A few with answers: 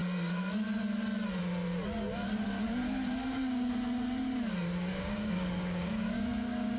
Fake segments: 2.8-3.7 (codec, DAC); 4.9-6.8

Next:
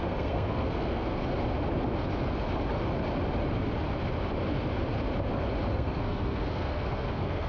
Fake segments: 0.0-1.2 (codec, SNAC); 5.7-7.5

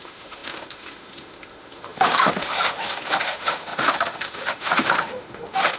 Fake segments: 0.0-5.8 (autoencoder, DAC-VAE)